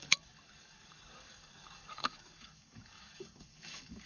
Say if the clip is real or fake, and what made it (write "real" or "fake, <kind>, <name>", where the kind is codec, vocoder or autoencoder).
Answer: fake, codec, DAC